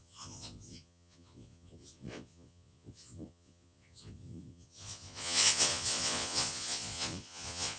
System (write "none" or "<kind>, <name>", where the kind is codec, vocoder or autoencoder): vocoder, Vocos